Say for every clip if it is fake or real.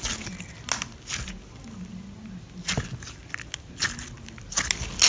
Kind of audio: real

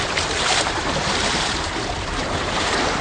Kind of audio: fake